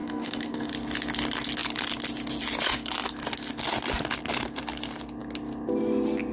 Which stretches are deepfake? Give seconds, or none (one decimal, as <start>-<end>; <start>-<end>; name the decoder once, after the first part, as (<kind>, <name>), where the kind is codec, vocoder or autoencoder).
0.0-0.7 (codec, SNAC)

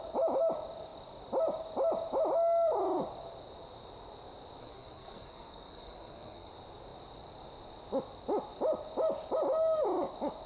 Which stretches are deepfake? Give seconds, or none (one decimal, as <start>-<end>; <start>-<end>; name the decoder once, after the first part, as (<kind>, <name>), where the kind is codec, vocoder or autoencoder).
4.6-6.5 (codec, SNAC)

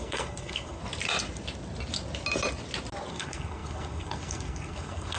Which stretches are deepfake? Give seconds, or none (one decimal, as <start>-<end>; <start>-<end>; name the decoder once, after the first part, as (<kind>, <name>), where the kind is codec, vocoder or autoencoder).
0.0-0.8 (codec, SNAC); 3.1-5.2

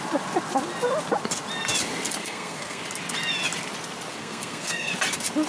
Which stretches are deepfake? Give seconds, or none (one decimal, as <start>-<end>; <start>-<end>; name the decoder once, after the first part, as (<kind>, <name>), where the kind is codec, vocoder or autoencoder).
2.2-2.8 (codec, SNAC); 4.2-4.9